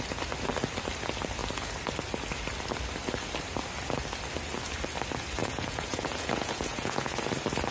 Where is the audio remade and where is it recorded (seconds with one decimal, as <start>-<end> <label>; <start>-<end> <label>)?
0.0-5.4 recorded; 5.4-7.2 remade; 7.2-7.7 recorded